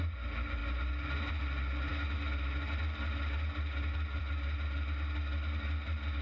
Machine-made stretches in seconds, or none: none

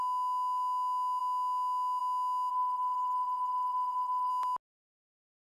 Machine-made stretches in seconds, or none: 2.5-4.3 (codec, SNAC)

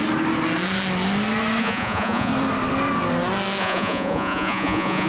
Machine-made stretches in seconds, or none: 1.6-2.3 (vocoder, Vocos); 3.6-5.1

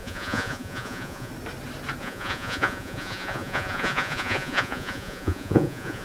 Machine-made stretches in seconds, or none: 0.0-1.3 (vocoder, Vocos); 2.0-6.0

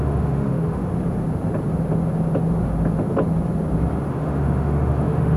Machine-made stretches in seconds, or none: 0.0-0.9 (autoencoder, DAC-VAE); 4.1-5.4

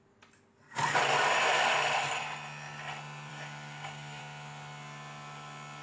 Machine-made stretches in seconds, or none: 3.3-4.2 (codec, DAC)